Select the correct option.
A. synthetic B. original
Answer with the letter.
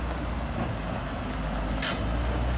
B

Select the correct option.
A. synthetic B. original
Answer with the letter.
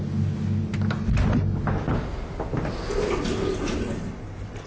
B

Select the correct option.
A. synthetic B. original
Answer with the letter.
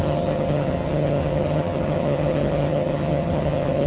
A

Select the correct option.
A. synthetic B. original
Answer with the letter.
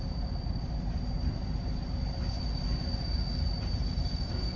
B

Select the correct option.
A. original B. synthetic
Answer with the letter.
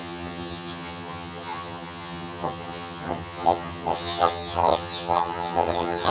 B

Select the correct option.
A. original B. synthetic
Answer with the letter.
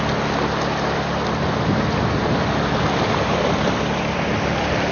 A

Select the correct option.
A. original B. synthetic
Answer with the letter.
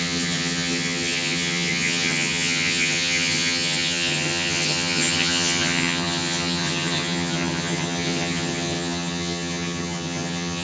B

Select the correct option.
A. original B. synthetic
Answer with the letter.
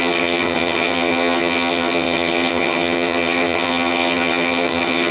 B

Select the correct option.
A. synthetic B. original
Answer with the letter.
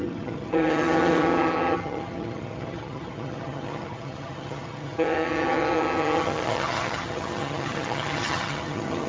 A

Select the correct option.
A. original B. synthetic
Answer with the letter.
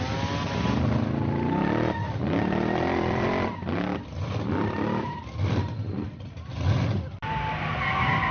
A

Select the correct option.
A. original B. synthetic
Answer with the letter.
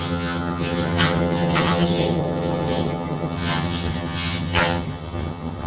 B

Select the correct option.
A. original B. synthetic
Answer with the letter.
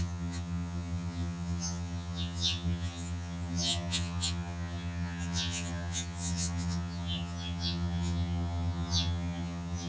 B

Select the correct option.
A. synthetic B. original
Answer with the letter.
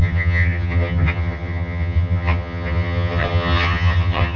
A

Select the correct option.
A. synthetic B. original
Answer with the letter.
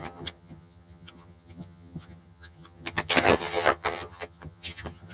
A